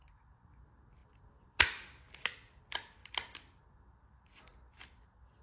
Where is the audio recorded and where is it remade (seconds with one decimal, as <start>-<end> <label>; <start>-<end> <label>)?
0.0-5.4 recorded